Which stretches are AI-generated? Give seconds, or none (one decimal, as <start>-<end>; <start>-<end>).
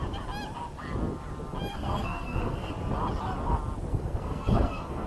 1.7-2.7; 3.9-5.1